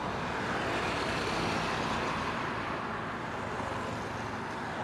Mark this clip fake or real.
real